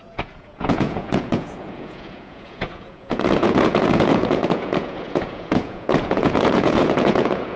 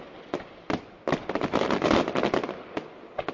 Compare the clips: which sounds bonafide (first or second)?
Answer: second